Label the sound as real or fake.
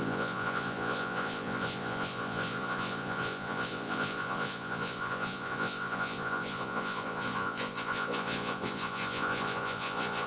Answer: fake